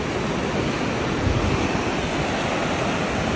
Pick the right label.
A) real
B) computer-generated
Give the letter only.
A